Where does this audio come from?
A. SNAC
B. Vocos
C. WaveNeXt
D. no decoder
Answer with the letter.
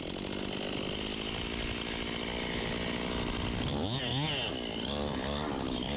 D